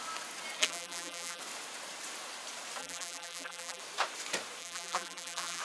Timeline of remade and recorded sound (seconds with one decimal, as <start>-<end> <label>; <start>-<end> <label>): 0.0-0.6 recorded; 0.6-1.4 remade; 1.4-2.8 recorded; 2.8-3.8 remade; 3.8-4.6 recorded; 4.6-5.6 remade